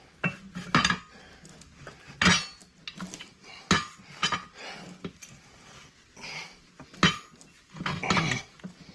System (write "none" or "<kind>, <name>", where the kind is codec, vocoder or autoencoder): none